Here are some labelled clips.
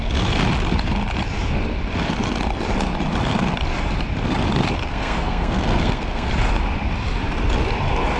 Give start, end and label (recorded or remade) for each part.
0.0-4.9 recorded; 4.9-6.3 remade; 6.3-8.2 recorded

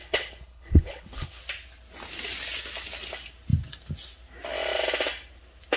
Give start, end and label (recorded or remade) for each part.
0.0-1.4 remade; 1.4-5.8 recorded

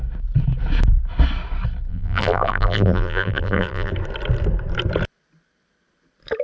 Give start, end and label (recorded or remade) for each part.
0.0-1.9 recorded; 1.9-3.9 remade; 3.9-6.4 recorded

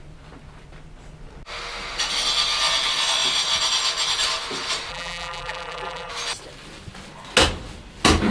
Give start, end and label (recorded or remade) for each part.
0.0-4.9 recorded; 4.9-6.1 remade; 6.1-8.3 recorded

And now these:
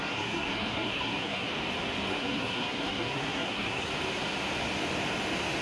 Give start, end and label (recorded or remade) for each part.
0.0-1.5 remade; 1.5-2.1 recorded; 2.1-3.9 remade; 3.9-5.6 recorded